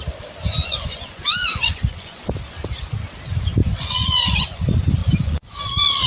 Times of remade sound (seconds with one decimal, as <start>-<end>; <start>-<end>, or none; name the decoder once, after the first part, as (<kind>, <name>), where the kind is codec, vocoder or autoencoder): 0.6-2.3 (vocoder, Vocos); 3.6-4.6; 5.0-6.1